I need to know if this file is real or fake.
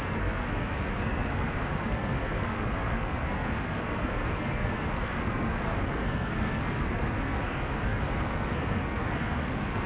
fake